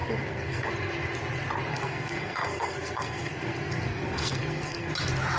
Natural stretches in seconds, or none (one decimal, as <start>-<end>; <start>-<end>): 0.7-1.7; 4.9-5.4